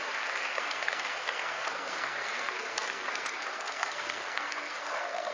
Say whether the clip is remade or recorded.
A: remade